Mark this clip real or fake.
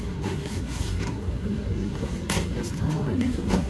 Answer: fake